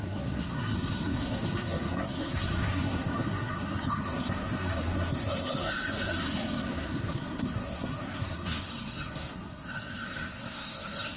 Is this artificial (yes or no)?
yes